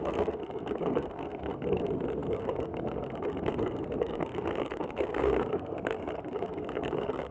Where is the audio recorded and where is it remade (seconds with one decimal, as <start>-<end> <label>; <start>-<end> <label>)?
0.0-7.3 remade